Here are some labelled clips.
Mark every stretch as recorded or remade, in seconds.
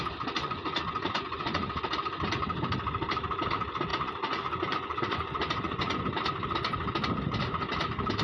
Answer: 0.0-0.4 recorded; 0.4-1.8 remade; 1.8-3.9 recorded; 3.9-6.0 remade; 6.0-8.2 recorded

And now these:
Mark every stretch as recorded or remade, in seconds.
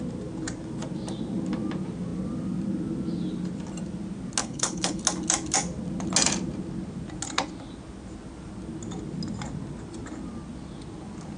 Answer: 0.0-4.4 recorded; 4.4-5.0 remade; 5.0-11.4 recorded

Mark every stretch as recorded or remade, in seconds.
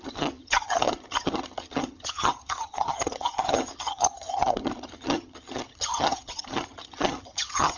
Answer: 0.0-7.8 remade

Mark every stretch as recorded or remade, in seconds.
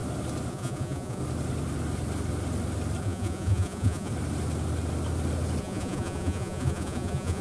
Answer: 0.0-0.5 recorded; 0.5-1.2 remade; 1.2-3.0 recorded; 3.0-4.1 remade; 4.1-5.6 recorded; 5.6-7.4 remade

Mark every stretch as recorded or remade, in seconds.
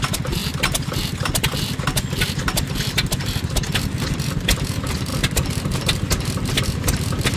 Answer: 0.0-7.4 recorded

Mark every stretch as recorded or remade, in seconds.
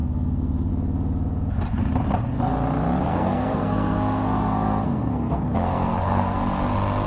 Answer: 0.0-0.7 remade; 0.7-3.0 recorded; 3.0-6.4 remade; 6.4-7.1 recorded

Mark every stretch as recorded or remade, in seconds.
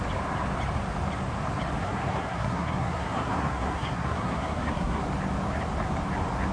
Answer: 0.0-1.8 recorded; 1.8-5.0 remade; 5.0-6.5 recorded